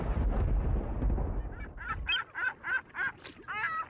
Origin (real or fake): real